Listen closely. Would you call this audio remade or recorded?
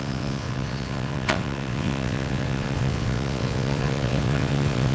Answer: remade